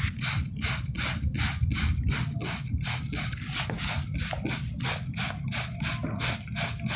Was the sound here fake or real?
real